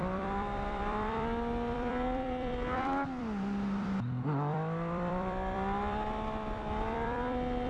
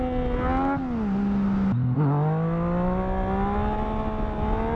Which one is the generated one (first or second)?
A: first